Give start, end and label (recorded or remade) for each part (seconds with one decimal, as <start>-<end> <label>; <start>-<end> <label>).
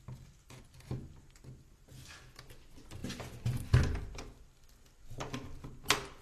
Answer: 0.0-6.2 recorded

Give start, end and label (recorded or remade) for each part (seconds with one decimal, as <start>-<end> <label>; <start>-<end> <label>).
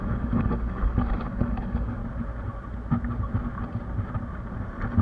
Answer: 0.0-2.0 remade; 2.0-5.0 recorded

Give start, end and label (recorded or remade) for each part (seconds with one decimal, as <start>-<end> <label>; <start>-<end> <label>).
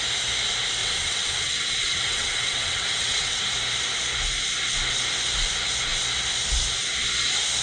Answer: 0.0-0.8 recorded; 0.8-3.4 remade; 3.4-7.6 recorded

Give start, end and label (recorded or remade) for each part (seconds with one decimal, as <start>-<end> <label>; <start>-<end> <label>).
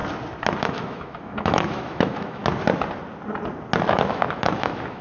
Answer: 0.0-0.6 recorded; 0.6-2.4 remade; 2.4-3.9 recorded; 3.9-5.0 remade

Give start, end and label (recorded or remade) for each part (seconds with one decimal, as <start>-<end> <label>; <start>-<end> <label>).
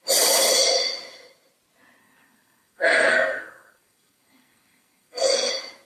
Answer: 0.0-2.0 recorded; 2.0-5.5 remade; 5.5-5.9 recorded